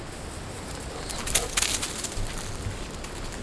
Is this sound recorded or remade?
recorded